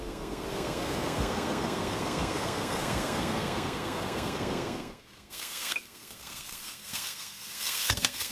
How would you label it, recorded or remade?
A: remade